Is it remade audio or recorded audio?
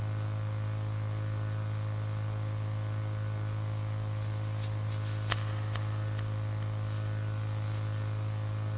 recorded